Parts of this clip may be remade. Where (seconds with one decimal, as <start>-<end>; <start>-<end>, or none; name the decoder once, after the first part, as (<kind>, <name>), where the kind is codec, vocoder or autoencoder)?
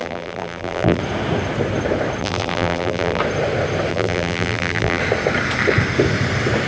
0.0-1.0 (vocoder, BigVGAN v2); 2.2-3.2; 3.9-5.0